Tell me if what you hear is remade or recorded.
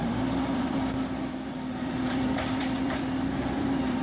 remade